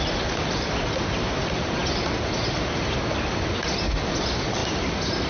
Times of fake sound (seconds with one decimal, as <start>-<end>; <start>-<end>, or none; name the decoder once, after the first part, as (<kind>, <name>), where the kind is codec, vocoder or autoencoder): none